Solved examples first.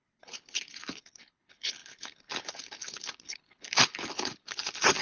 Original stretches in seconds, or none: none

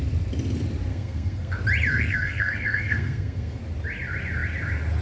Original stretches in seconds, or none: 0.0-0.9; 1.5-1.9; 3.6-5.0

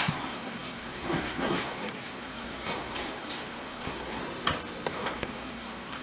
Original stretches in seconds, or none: 4.2-4.9

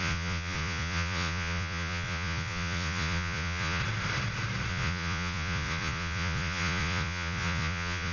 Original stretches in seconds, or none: 3.8-4.7